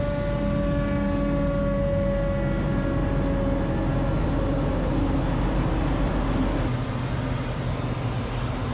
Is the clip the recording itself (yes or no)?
yes